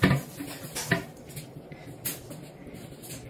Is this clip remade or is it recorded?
recorded